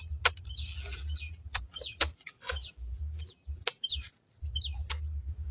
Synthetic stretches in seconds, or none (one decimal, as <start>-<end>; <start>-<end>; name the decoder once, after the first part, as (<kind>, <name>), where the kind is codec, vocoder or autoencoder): 0.7-4.0 (vocoder, BigVGAN v2)